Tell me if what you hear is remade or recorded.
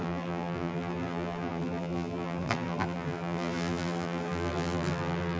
remade